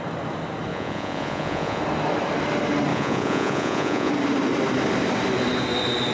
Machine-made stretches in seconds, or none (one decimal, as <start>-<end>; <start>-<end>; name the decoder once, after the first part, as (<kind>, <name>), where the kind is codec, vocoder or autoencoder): 0.7-1.8 (vocoder, Vocos); 2.9-4.1